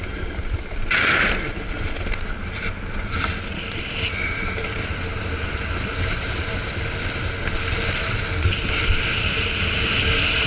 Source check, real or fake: real